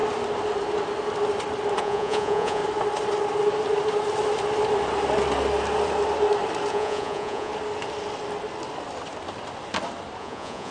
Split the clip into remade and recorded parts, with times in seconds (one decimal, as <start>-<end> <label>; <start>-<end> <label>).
0.0-1.8 recorded; 1.8-2.6 remade; 2.6-6.7 recorded; 6.7-7.5 remade; 7.5-10.2 recorded; 10.2-10.7 remade